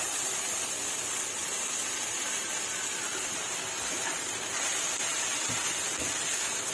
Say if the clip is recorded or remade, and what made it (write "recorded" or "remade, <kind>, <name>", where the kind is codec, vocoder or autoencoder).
recorded